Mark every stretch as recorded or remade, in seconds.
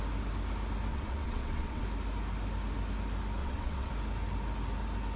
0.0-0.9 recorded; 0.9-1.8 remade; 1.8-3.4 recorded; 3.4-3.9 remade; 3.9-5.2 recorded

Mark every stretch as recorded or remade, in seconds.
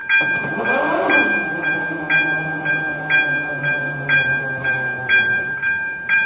0.0-3.8 recorded; 3.8-6.3 remade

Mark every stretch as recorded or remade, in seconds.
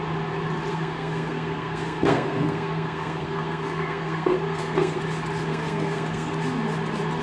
0.0-0.7 recorded; 0.7-5.0 remade; 5.0-5.5 recorded; 5.5-6.4 remade; 6.4-7.2 recorded